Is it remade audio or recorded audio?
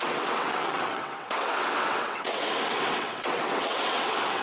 remade